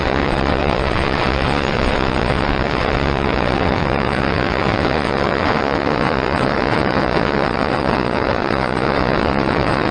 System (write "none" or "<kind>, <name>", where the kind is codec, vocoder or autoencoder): vocoder, WaveNeXt